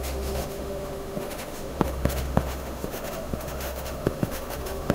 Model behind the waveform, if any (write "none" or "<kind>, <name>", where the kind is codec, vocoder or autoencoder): autoencoder, DAC-VAE